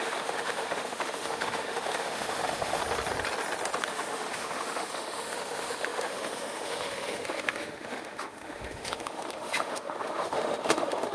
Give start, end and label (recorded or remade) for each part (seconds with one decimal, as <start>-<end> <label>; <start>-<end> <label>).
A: 0.0-2.8 remade; 2.8-3.9 recorded; 3.9-11.1 remade